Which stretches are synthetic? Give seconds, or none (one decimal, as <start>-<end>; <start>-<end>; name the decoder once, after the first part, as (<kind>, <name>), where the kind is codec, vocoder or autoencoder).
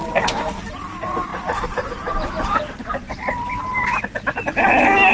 1.3-2.6 (vocoder, BigVGAN v2)